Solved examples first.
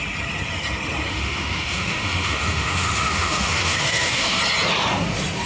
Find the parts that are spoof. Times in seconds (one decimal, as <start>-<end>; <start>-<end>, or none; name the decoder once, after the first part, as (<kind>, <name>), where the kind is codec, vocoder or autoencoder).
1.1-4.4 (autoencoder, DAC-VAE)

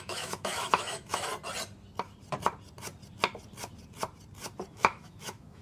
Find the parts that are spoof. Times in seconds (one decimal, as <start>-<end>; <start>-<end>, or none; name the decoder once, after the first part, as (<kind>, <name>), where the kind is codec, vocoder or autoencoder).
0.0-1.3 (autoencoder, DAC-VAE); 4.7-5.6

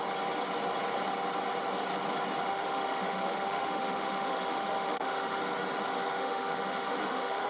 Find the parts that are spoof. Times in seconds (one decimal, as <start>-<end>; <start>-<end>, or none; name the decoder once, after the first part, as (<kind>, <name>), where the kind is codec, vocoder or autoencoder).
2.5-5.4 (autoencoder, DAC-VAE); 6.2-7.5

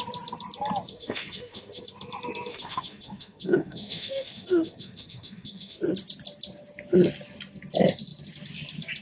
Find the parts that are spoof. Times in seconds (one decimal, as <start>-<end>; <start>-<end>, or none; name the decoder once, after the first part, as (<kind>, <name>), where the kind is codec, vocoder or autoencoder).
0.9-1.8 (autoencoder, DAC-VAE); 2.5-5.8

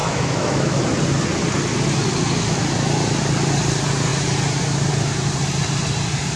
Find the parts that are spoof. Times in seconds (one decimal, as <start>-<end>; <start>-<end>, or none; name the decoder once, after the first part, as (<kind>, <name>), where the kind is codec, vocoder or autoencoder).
0.0-0.8 (autoencoder, DAC-VAE)

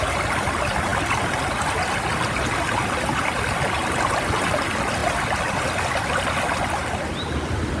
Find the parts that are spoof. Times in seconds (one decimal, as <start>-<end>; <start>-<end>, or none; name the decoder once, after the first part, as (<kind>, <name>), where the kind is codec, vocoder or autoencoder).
none